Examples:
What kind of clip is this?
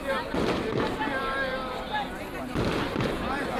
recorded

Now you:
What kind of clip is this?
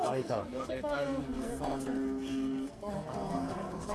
remade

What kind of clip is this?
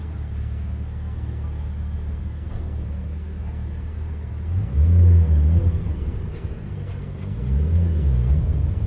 remade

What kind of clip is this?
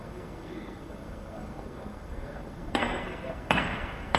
remade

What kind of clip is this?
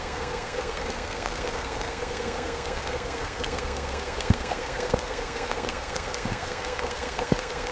remade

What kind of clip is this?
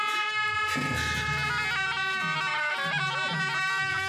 recorded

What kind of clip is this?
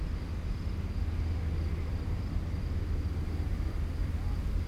recorded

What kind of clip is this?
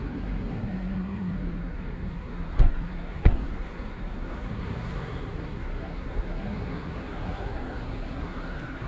remade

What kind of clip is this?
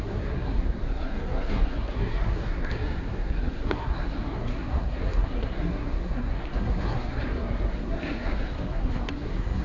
remade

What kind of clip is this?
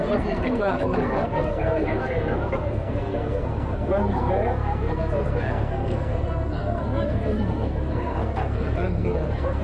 remade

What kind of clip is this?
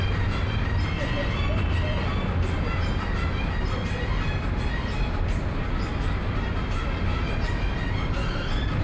recorded